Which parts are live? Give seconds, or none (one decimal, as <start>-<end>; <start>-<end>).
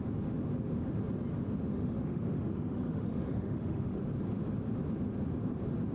0.0-1.7; 4.0-5.9